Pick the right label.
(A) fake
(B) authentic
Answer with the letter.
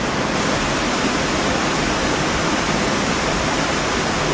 B